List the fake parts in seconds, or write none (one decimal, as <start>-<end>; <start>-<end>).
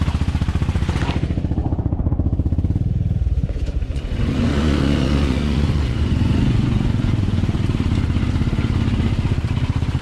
1.6-2.1; 3.4-7.6